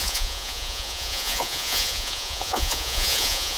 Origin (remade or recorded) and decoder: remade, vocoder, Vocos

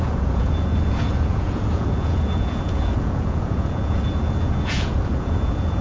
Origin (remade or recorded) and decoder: remade, vocoder, Vocos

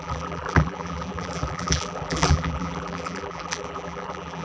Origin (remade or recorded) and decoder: remade, vocoder, BigVGAN v2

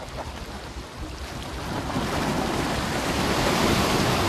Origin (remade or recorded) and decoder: recorded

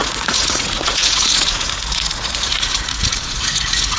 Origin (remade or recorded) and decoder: remade, vocoder, Vocos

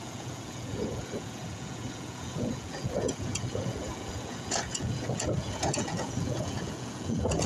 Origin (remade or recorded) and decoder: remade, vocoder, Vocos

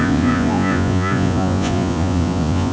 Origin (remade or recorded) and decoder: remade, vocoder, Vocos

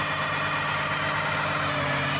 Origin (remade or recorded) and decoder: recorded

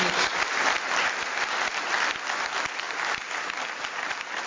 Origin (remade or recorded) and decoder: recorded